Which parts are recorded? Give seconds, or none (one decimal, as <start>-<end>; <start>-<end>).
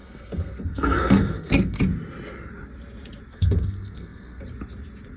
1.8-3.3; 4.4-5.2